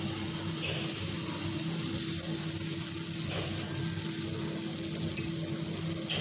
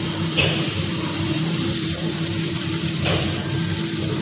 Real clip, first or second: first